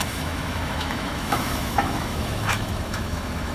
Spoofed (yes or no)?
yes